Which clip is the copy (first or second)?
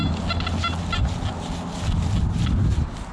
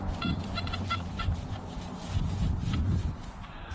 second